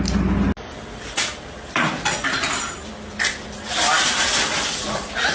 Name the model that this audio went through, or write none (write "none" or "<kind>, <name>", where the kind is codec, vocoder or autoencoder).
none